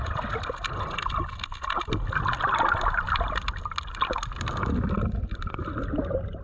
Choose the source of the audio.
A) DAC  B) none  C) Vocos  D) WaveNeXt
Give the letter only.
B